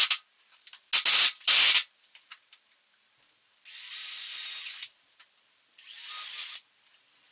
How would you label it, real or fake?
real